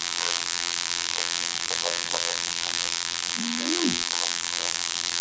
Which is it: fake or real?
fake